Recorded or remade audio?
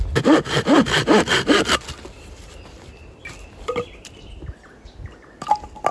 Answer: recorded